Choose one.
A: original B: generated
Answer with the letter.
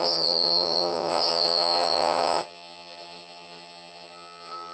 B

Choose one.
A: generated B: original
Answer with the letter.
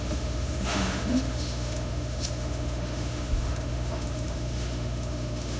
A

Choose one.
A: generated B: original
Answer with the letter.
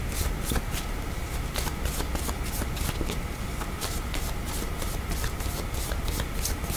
B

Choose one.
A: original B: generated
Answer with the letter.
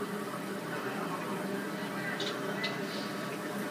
A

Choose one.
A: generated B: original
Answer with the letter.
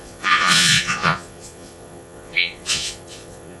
A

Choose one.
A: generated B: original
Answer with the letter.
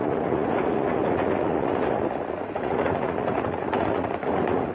A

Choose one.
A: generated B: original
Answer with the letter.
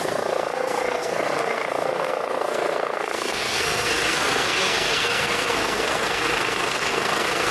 A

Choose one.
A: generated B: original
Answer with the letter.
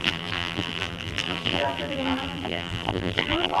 A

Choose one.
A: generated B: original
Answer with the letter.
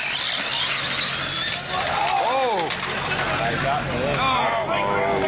B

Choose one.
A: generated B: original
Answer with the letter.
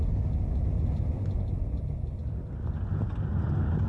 B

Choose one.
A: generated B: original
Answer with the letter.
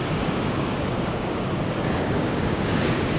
A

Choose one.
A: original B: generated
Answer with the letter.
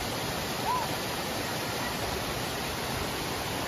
A